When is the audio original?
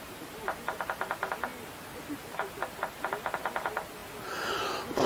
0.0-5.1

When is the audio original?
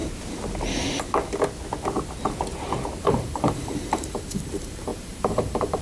0.0-3.0